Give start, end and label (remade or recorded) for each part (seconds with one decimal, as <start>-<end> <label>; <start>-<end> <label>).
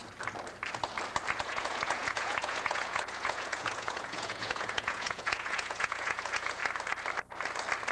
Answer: 0.0-1.4 recorded; 1.4-6.6 remade; 6.6-7.9 recorded